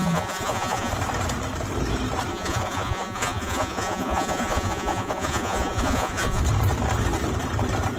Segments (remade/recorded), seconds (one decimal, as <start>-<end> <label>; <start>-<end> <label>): 0.0-0.9 remade; 0.9-2.3 recorded; 2.3-6.4 remade; 6.4-8.0 recorded